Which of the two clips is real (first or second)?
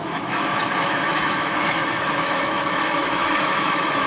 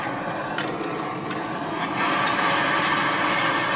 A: second